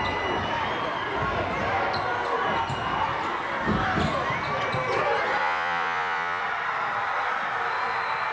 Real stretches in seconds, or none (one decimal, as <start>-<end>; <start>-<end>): 0.0-5.4; 6.4-8.3